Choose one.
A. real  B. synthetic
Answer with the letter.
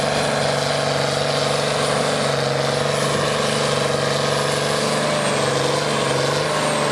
A